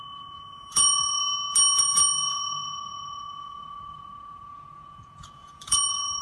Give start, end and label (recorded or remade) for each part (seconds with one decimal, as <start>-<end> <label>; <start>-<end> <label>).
0.0-1.2 remade; 1.2-1.8 recorded; 1.8-6.2 remade